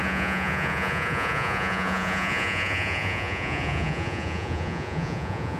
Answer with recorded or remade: remade